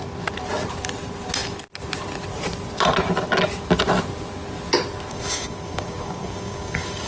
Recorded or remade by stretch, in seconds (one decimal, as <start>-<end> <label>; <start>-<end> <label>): 0.0-5.1 recorded; 5.1-7.1 remade